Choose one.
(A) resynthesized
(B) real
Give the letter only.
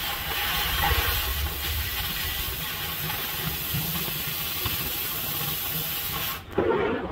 B